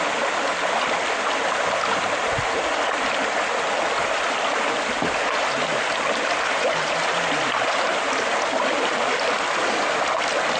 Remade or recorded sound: recorded